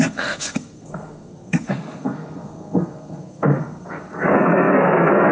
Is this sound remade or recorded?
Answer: remade